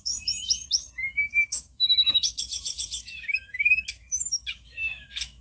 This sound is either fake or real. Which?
fake